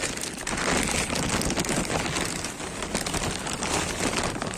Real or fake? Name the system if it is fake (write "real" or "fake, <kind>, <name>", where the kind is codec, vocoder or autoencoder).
real